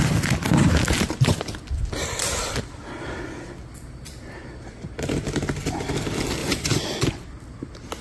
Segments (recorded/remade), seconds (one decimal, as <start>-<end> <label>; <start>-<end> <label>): 0.0-6.4 recorded; 6.4-7.3 remade; 7.3-8.0 recorded